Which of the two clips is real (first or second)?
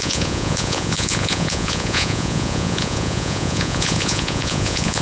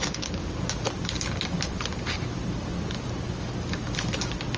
second